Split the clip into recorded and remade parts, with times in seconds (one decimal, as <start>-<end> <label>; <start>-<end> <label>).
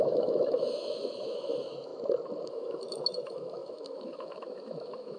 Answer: 0.0-1.9 remade; 1.9-2.5 recorded; 2.5-5.2 remade